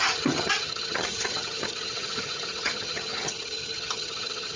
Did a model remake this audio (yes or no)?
yes